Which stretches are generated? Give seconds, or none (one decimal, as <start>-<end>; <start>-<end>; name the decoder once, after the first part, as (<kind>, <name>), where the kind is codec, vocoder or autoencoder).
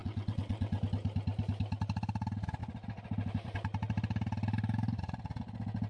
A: 0.0-0.8 (vocoder, WaveNeXt)